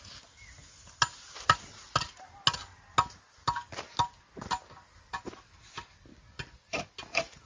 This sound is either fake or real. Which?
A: real